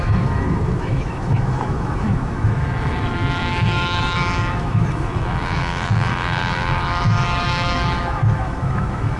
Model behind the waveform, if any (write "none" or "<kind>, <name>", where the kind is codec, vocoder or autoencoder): autoencoder, DAC-VAE